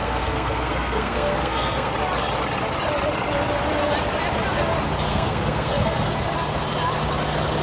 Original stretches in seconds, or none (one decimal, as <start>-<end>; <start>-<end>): 1.9-5.1; 6.1-7.6

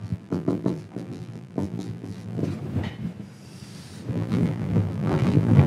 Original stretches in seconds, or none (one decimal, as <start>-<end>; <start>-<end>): 2.4-4.1

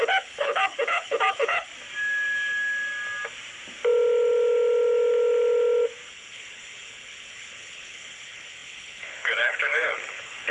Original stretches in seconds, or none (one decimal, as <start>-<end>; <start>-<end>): 1.7-6.1

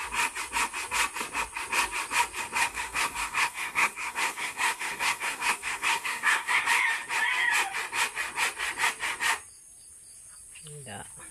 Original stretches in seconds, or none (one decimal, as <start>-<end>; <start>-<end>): 0.0-2.6; 6.6-11.3

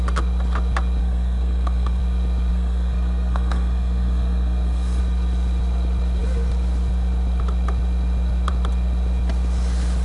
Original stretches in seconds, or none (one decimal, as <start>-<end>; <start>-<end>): 0.0-1.0; 2.0-2.5; 5.0-10.0